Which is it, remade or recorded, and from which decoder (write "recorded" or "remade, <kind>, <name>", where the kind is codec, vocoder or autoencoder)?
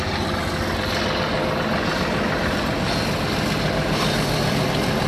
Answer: recorded